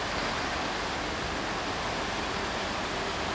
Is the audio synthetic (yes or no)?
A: no